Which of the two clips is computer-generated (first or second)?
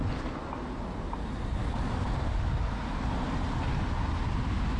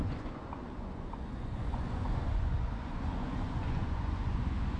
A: second